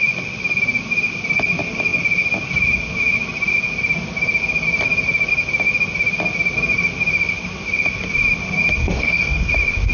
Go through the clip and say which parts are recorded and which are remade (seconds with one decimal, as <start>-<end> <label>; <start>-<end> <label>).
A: 0.0-8.8 recorded; 8.8-9.5 remade; 9.5-9.9 recorded